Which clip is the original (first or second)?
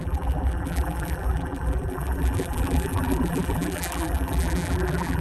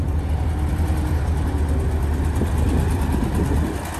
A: second